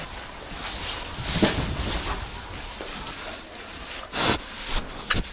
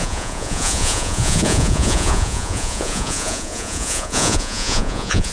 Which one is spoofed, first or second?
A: second